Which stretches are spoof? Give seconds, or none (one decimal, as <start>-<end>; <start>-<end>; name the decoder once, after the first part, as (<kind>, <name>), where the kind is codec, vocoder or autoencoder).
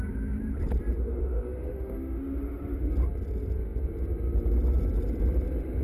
1.0-2.9 (autoencoder, DAC-VAE)